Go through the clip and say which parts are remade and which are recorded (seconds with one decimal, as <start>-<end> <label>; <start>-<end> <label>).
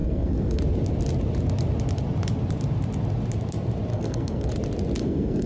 0.0-0.6 remade; 0.6-3.9 recorded; 3.9-4.5 remade; 4.5-5.0 recorded; 5.0-5.5 remade